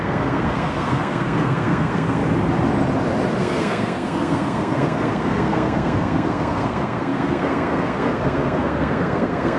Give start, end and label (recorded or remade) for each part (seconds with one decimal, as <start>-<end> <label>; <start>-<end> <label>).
0.0-2.2 remade; 2.2-3.4 recorded; 3.4-9.6 remade